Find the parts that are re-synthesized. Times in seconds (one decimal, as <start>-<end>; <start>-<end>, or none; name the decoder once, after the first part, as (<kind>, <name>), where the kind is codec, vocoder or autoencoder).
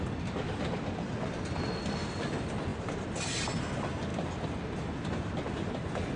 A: none